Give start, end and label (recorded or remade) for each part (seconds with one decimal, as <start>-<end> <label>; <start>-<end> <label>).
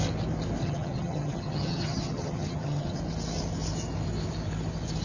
0.0-0.6 recorded; 0.6-3.0 remade; 3.0-5.0 recorded